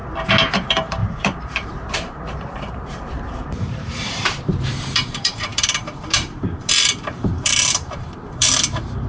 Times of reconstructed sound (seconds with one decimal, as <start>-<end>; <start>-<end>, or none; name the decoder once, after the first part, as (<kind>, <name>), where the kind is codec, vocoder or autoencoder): 0.5-9.1 (vocoder, BigVGAN v2)